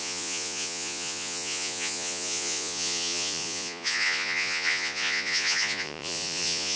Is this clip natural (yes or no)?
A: no